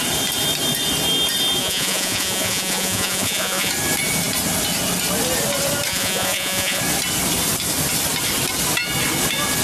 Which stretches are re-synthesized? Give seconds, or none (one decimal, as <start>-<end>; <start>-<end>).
1.6-3.7; 5.9-6.8